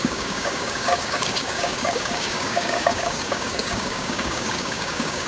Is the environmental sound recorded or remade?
remade